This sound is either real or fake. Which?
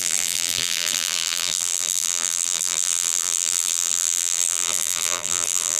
fake